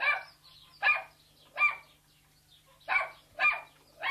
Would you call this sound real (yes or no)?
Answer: yes